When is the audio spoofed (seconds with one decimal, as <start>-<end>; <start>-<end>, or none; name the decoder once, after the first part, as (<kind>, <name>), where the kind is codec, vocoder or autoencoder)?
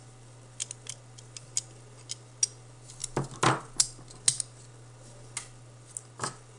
none